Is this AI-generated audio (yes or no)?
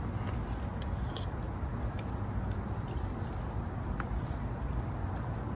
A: no